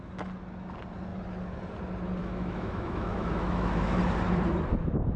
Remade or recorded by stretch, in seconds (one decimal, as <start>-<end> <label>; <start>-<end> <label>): 0.0-2.2 recorded; 2.2-4.0 remade; 4.0-5.2 recorded